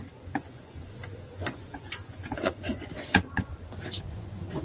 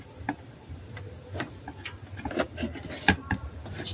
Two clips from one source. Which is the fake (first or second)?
first